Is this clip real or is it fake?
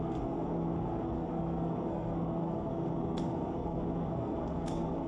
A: fake